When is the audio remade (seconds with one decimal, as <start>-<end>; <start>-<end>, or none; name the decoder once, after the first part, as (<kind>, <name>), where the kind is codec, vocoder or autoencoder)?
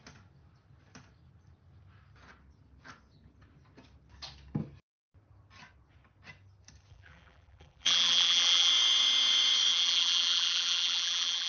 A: 6.9-8.7 (vocoder, BigVGAN v2); 9.7-11.5